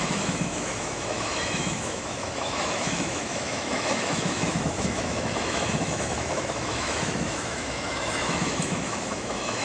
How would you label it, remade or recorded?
remade